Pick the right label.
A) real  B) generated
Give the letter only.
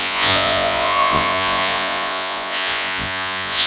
B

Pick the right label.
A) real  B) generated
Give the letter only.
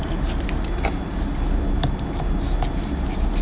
A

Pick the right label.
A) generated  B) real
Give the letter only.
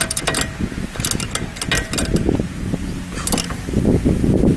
B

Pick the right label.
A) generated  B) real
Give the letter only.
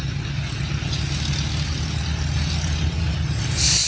B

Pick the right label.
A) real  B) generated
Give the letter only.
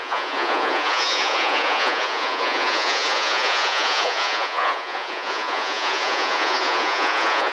B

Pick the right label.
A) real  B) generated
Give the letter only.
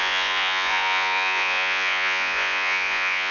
B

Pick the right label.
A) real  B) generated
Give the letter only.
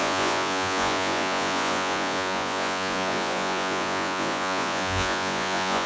B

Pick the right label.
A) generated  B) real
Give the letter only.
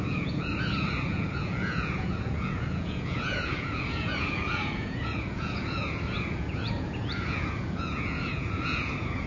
A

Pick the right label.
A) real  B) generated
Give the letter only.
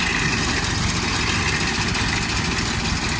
A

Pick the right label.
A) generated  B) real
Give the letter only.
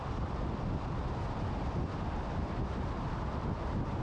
B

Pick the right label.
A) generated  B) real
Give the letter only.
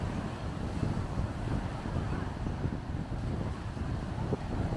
B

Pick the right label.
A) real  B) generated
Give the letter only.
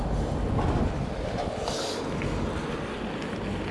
A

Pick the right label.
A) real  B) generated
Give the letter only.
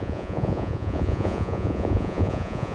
B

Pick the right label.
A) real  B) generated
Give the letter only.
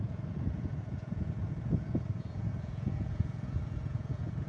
B